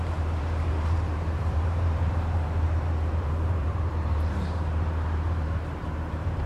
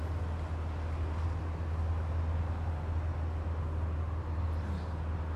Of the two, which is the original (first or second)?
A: second